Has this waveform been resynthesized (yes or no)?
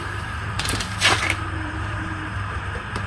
yes